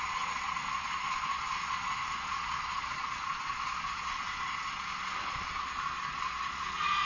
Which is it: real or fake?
fake